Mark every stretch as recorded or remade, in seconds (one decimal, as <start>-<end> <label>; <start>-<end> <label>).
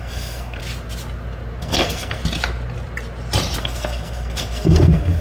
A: 0.0-0.6 remade; 0.6-1.6 recorded; 1.6-2.2 remade; 2.2-3.6 recorded; 3.6-5.2 remade